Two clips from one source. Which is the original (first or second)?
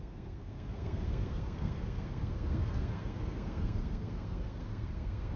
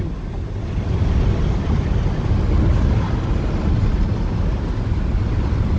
second